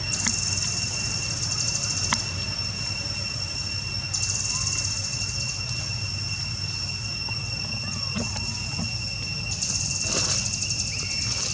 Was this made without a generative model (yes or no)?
yes